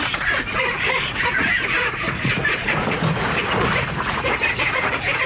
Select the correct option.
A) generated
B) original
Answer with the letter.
A